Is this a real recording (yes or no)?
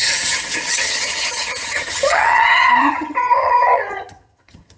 no